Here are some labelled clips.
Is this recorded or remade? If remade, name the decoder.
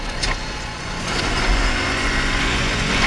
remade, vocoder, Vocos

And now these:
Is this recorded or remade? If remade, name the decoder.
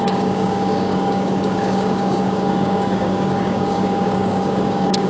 remade, codec, DAC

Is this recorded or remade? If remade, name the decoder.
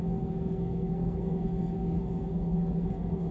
remade, codec, SNAC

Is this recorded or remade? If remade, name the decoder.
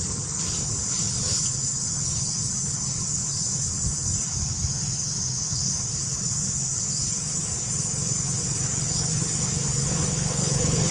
remade, codec, HILCodec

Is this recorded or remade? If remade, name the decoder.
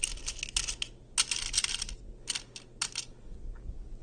recorded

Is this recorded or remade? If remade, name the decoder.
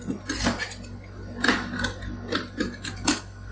recorded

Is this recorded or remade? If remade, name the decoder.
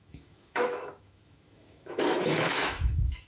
remade, autoencoder, DAC-VAE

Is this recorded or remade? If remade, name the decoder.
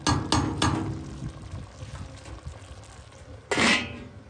recorded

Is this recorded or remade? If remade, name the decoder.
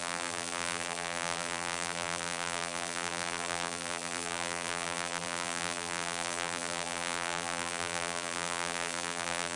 remade, vocoder, BigVGAN v2